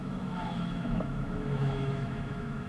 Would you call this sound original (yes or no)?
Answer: no